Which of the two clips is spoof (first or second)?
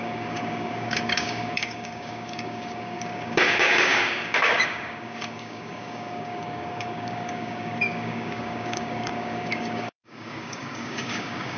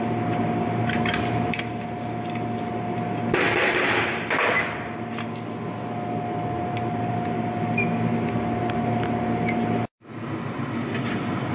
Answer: first